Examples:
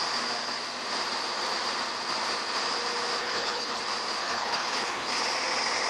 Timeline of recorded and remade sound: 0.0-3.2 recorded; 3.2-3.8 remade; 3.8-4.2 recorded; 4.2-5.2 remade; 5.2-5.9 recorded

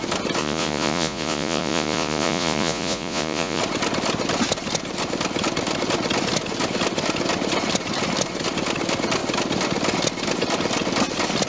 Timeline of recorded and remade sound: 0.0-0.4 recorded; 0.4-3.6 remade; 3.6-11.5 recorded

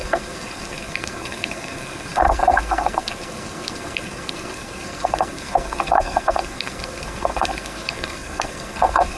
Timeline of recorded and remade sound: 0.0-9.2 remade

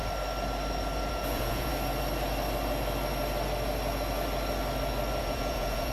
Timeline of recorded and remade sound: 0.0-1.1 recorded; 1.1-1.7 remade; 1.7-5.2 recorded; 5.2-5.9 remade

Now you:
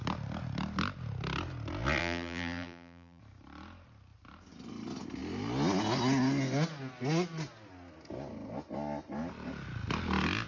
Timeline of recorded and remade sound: 0.0-2.0 recorded; 2.0-3.2 remade; 3.2-10.5 recorded

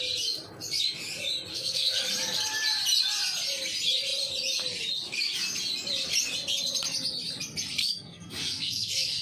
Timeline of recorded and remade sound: 0.0-1.5 recorded; 1.5-2.0 remade; 2.0-7.8 recorded; 7.8-9.2 remade

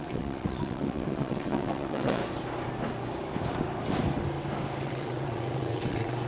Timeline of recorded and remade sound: 0.0-2.2 remade; 2.2-4.8 recorded; 4.8-6.3 remade

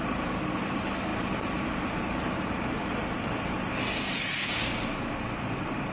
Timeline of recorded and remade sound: 0.0-5.9 remade